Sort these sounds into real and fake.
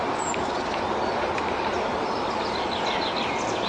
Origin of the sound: fake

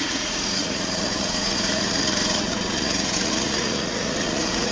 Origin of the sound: fake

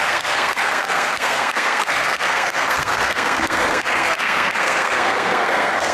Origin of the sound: fake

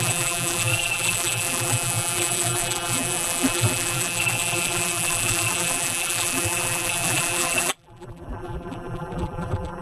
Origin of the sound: fake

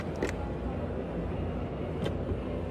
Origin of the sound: real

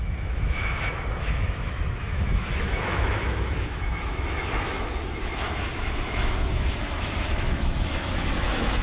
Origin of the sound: fake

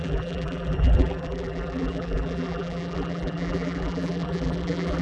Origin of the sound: fake